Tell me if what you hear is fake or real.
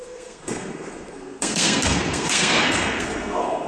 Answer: fake